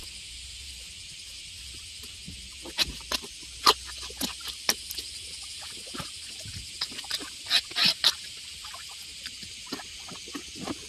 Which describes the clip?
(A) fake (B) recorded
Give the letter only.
B